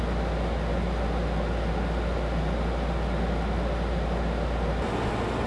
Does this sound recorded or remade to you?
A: recorded